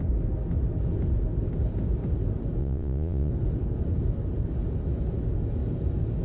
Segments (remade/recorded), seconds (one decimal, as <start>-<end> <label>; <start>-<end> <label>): 0.0-2.6 recorded; 2.6-3.3 remade; 3.3-6.2 recorded